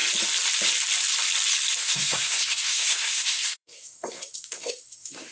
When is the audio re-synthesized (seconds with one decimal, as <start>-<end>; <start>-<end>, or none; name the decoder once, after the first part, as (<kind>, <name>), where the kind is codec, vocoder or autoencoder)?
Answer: 1.8-5.3 (codec, SNAC)